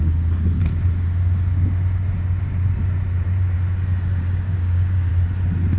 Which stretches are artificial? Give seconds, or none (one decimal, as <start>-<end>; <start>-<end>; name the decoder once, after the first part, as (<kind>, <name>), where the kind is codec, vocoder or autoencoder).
0.0-0.7 (codec, DAC); 4.2-5.1